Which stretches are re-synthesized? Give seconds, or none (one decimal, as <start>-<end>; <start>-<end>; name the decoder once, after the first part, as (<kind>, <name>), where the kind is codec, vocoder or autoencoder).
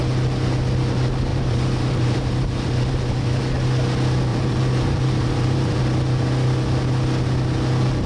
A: 1.3-3.4 (vocoder, BigVGAN v2); 4.3-5.8